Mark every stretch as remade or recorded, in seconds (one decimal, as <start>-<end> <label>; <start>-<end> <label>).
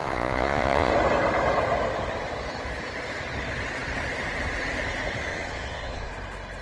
0.0-0.9 remade; 0.9-5.3 recorded; 5.3-6.1 remade; 6.1-6.6 recorded